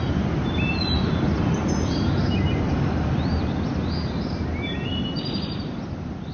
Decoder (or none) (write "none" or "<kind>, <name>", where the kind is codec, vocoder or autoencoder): none